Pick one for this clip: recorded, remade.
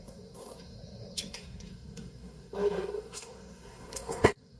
remade